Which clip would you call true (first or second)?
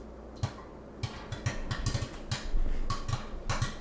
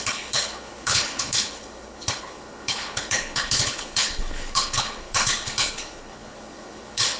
first